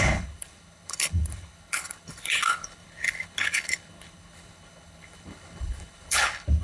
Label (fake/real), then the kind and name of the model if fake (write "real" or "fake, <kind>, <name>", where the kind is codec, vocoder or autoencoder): fake, codec, HILCodec